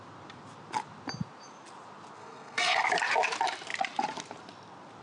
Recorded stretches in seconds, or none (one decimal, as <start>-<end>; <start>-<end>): 0.0-2.2; 2.8-5.0